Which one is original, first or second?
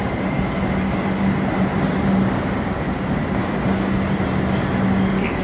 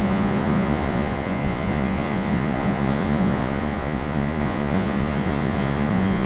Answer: first